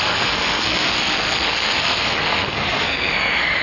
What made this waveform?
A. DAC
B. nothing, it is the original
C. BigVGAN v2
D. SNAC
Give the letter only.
D